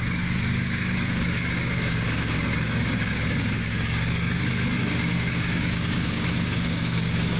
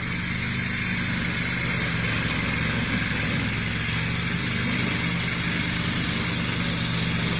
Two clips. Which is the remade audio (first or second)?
first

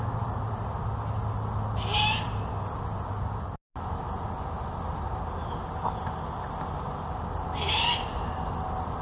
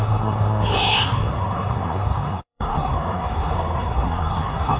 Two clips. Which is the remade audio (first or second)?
second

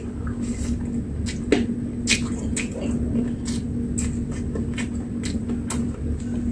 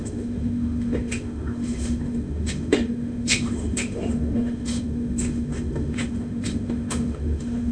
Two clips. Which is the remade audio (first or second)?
second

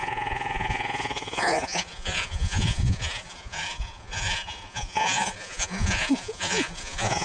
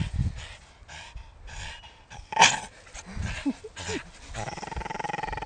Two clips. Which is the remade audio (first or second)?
first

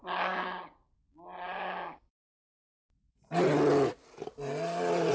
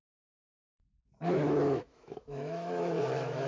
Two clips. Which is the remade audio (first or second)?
second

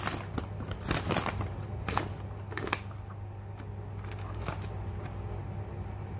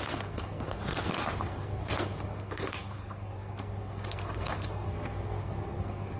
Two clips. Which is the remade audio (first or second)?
second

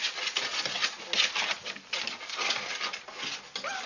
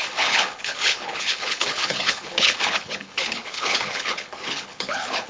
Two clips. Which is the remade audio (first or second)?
second